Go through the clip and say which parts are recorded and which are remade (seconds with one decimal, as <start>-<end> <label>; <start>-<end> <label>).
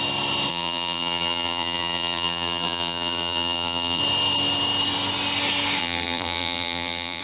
0.0-0.5 recorded; 0.5-4.0 remade; 4.0-5.8 recorded; 5.8-7.2 remade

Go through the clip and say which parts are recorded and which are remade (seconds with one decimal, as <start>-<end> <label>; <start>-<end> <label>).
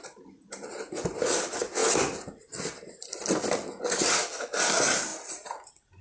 0.0-6.0 recorded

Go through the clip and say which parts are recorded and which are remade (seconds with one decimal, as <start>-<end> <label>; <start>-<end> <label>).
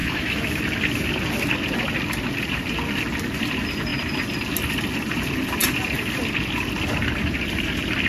0.0-0.6 remade; 0.6-8.1 recorded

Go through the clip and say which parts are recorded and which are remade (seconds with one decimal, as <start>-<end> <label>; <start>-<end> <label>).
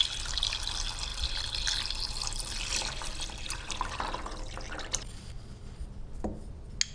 0.0-6.9 recorded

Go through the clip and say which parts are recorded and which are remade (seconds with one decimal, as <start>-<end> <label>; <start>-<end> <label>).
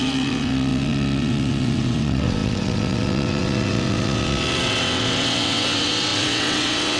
0.0-7.0 remade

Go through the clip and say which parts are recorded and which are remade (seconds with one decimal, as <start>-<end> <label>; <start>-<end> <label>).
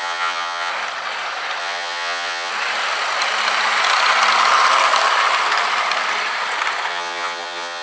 0.0-0.7 remade; 0.7-1.6 recorded; 1.6-2.5 remade; 2.5-6.9 recorded; 6.9-7.8 remade